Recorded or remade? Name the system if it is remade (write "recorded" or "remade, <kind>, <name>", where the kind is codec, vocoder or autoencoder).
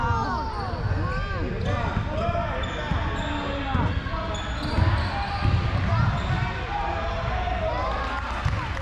recorded